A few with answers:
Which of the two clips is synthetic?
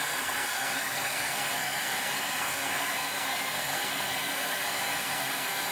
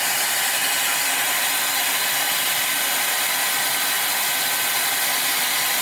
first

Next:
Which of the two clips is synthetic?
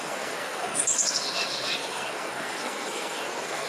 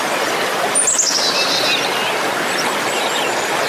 first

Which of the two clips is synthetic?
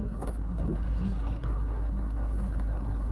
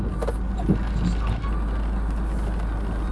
first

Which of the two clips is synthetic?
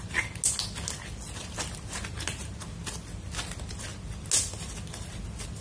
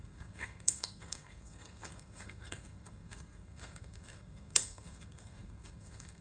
second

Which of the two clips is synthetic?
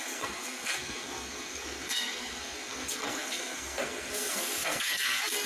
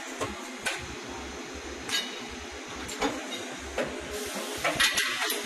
first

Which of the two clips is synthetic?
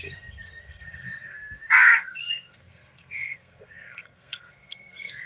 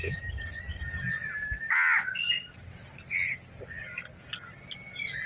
first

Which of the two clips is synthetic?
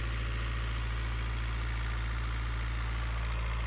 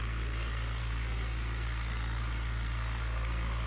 second